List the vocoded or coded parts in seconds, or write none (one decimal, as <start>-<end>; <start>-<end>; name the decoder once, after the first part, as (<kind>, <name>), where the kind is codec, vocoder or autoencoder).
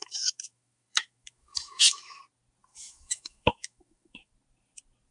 0.0-2.2 (autoencoder, DAC-VAE); 2.7-4.3